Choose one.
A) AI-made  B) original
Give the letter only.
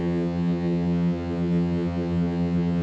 A